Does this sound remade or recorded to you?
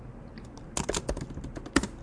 recorded